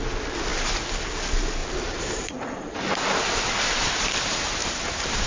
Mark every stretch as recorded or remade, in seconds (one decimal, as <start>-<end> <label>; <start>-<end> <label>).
0.0-1.6 recorded; 1.6-2.9 remade; 2.9-4.6 recorded; 4.6-5.3 remade

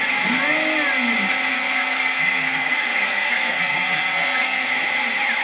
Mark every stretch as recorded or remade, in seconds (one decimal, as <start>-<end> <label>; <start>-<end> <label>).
0.0-1.5 recorded; 1.5-4.7 remade; 4.7-5.4 recorded

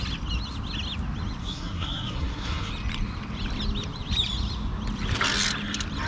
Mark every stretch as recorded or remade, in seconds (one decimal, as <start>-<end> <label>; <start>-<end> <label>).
0.0-1.4 recorded; 1.4-2.7 remade; 2.7-6.1 recorded

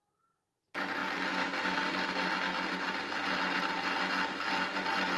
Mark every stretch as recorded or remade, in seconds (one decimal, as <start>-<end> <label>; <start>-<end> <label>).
0.0-5.2 recorded

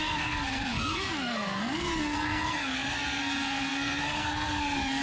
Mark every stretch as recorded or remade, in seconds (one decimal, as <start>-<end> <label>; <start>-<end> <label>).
0.0-5.0 remade

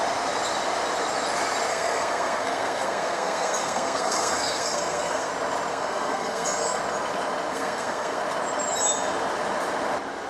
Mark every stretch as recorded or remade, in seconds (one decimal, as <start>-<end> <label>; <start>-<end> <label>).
0.0-1.7 recorded; 1.7-5.3 remade; 5.3-5.7 recorded; 5.7-6.8 remade; 6.8-7.5 recorded; 7.5-8.2 remade; 8.2-10.3 recorded